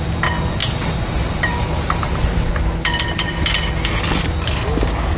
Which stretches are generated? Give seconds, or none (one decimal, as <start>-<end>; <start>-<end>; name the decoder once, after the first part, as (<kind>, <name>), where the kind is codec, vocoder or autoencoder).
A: 0.6-2.5 (vocoder, BigVGAN v2)